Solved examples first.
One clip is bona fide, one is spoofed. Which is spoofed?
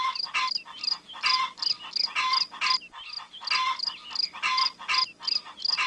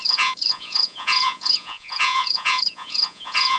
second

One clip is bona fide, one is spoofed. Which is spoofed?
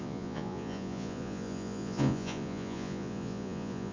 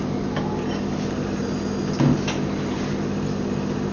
first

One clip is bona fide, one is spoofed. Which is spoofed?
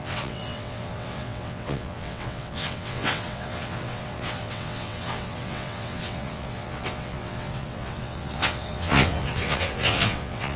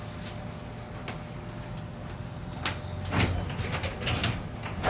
first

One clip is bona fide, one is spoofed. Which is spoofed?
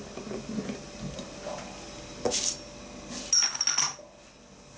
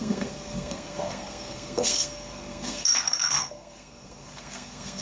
second